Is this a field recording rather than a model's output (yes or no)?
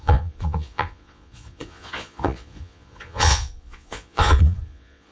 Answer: no